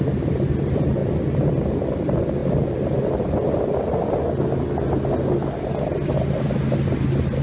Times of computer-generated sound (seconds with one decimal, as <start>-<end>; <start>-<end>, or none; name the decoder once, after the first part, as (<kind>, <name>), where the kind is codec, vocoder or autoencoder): none